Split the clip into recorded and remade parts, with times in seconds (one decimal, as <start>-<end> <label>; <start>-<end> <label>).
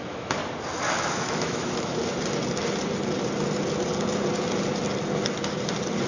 0.0-0.4 remade; 0.4-1.1 recorded; 1.1-2.0 remade; 2.0-6.1 recorded